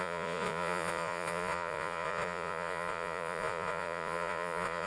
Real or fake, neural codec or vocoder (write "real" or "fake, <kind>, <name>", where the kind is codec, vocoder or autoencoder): fake, vocoder, Vocos